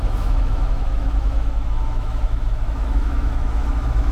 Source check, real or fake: fake